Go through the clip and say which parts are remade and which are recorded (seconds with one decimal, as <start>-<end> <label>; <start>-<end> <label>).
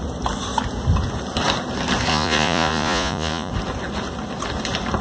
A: 0.0-2.1 recorded; 2.1-3.5 remade; 3.5-5.0 recorded